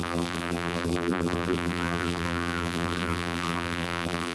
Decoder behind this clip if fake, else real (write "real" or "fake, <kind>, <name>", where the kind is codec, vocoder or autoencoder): fake, vocoder, BigVGAN v2